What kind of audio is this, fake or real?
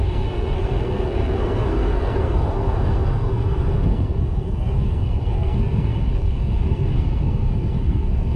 fake